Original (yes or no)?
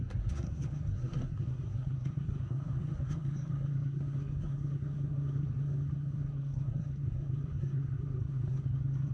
no